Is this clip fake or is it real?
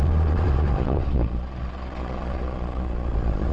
fake